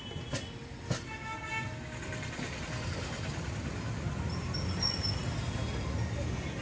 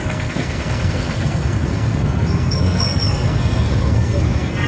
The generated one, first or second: second